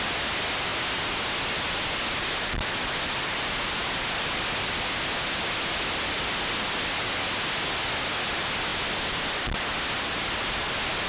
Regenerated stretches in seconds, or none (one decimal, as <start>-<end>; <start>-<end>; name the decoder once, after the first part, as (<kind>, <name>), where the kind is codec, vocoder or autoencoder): none